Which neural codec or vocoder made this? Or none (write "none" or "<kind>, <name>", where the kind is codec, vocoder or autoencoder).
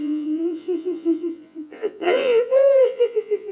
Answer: vocoder, Vocos